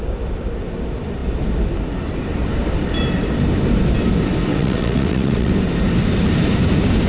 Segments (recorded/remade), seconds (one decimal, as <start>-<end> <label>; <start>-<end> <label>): 0.0-4.5 recorded; 4.5-5.5 remade; 5.5-7.1 recorded